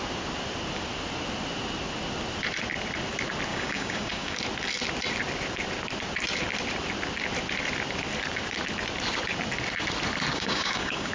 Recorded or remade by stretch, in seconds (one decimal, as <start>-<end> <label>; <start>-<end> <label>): 0.0-3.5 recorded; 3.5-4.4 remade; 4.4-10.3 recorded; 10.3-11.1 remade